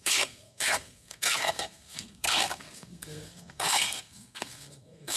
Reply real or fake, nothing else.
fake